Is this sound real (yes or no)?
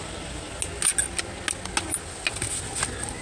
yes